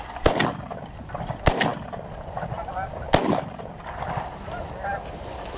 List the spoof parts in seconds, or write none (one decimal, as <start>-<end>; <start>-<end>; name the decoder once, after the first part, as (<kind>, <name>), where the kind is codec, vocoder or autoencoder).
none

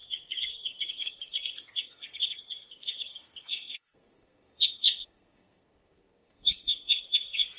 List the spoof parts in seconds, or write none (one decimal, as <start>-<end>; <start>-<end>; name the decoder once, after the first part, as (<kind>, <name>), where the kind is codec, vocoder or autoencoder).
0.0-7.6 (codec, SNAC)

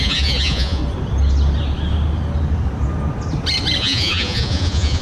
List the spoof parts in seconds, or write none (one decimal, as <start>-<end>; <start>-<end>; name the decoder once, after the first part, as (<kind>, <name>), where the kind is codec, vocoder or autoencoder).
0.0-0.8 (vocoder, Vocos); 3.8-5.0

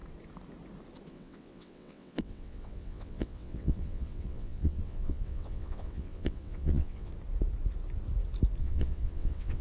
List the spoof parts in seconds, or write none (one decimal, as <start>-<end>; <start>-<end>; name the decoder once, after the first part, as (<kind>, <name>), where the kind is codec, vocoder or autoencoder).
1.1-7.1 (vocoder, WaveNeXt); 8.6-9.6

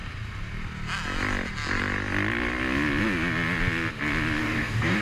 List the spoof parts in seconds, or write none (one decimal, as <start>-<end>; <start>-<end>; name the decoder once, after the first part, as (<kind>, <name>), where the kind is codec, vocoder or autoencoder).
4.4-5.0 (codec, DAC)

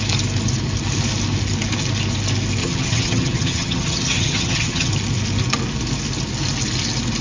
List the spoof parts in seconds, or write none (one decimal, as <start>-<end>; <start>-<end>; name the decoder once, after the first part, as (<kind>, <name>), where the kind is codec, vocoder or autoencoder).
2.6-4.9 (vocoder, HiFi-GAN)

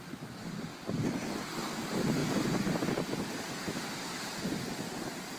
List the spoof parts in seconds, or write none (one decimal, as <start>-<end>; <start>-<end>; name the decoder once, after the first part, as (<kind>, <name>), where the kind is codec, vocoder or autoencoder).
2.2-2.8 (vocoder, BigVGAN v2)